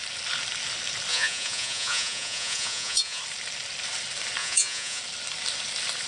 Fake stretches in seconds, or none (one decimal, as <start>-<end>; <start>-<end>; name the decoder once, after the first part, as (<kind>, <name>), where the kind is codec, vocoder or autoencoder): 1.1-3.2 (vocoder, Vocos); 4.4-5.0